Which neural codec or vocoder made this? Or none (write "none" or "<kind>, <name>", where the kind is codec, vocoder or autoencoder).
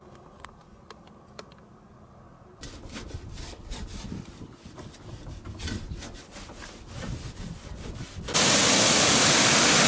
none